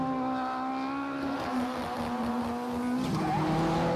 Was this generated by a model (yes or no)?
no